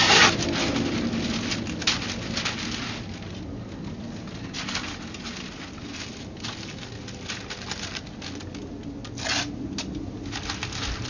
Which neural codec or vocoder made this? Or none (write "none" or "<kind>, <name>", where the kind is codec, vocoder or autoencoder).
none